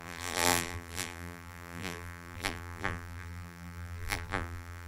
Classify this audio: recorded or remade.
remade